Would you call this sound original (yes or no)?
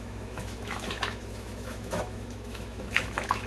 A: no